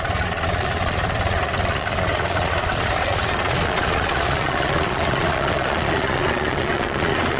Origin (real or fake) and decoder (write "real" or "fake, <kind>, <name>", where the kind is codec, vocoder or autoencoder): fake, vocoder, Vocos